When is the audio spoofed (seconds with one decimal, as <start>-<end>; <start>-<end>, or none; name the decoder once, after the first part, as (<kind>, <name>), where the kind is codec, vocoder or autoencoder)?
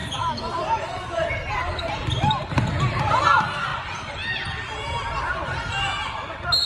0.0-3.7 (vocoder, BigVGAN v2)